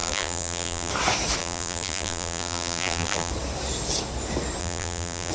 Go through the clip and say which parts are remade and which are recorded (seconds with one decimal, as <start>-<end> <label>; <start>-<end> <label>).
0.0-0.9 remade; 0.9-1.4 recorded; 1.4-3.3 remade; 3.3-4.6 recorded; 4.6-5.3 remade